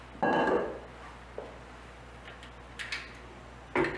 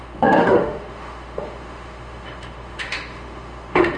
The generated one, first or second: second